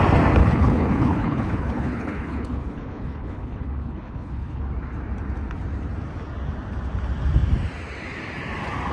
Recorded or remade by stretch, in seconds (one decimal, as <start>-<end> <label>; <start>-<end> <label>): 0.0-0.4 recorded; 0.4-4.6 remade; 4.6-8.9 recorded